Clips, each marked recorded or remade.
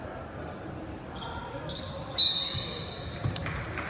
recorded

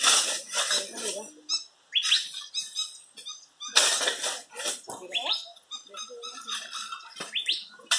recorded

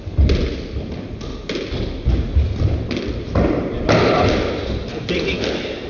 recorded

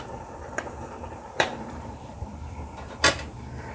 remade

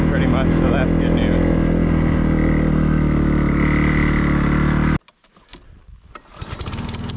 recorded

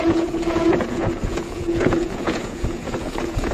remade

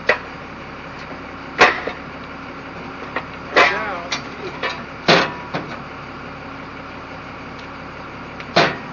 recorded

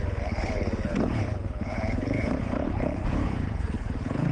remade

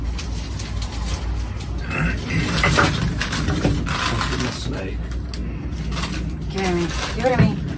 recorded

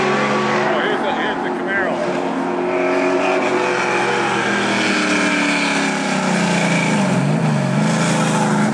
recorded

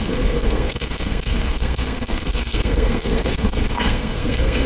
remade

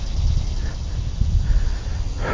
recorded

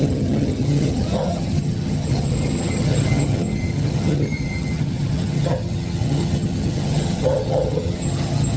remade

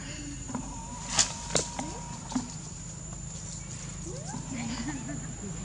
recorded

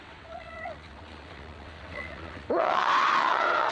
remade